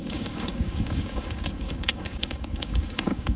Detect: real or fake fake